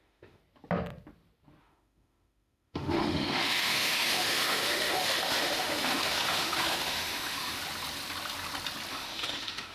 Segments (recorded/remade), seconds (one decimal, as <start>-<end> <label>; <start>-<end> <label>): 0.0-0.4 remade; 0.4-1.6 recorded; 1.6-7.6 remade; 7.6-8.9 recorded; 8.9-9.7 remade